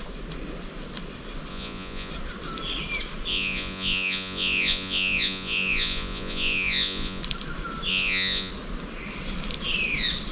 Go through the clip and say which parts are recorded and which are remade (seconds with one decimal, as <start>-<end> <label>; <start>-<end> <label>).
0.0-1.5 recorded; 1.5-2.1 remade; 2.1-3.3 recorded; 3.3-7.2 remade; 7.2-7.9 recorded; 7.9-8.5 remade; 8.5-10.3 recorded